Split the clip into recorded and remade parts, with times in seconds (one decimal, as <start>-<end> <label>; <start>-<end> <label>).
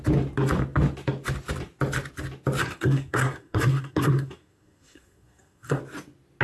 0.0-2.6 recorded; 2.6-5.8 remade; 5.8-6.4 recorded